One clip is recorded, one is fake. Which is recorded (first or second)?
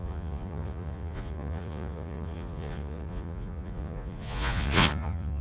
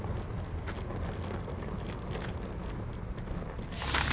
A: second